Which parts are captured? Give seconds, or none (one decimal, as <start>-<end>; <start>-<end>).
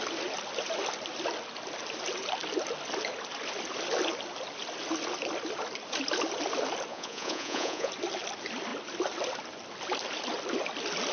0.0-6.9; 7.9-11.1